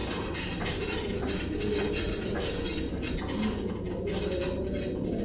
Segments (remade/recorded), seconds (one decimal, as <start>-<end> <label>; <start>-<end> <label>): 0.0-3.1 remade; 3.1-5.2 recorded

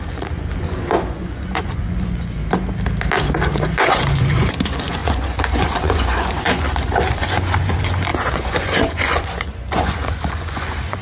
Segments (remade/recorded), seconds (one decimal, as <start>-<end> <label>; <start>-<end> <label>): 0.0-2.4 remade; 2.4-3.2 recorded; 3.2-11.0 remade

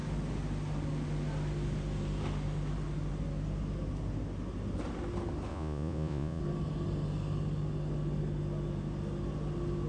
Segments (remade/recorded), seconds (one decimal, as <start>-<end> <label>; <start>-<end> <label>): 0.0-5.5 recorded; 5.5-6.4 remade; 6.4-9.9 recorded

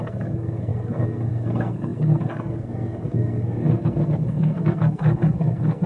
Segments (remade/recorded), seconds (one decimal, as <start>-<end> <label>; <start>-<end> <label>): 0.0-5.9 remade

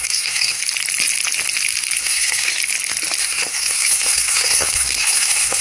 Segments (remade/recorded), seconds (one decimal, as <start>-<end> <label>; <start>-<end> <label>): 0.0-0.6 remade; 0.6-2.0 recorded; 2.0-2.5 remade; 2.5-3.2 recorded; 3.2-5.6 remade

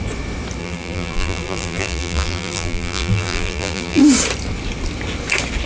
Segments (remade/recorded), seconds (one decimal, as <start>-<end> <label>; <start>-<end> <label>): 0.0-0.6 recorded; 0.6-4.0 remade; 4.0-5.7 recorded

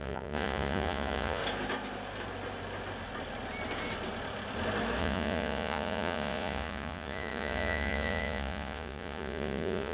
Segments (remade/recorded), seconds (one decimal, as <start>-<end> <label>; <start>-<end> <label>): 0.0-1.4 remade; 1.4-5.0 recorded; 5.0-9.9 remade

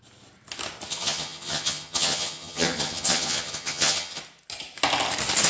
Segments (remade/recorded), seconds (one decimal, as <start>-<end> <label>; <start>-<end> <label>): 0.0-0.9 recorded; 0.9-4.2 remade; 4.2-5.5 recorded